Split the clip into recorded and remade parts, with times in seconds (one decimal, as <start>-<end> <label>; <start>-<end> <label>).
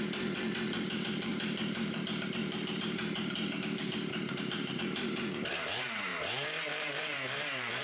0.0-1.3 remade; 1.3-2.8 recorded; 2.8-7.8 remade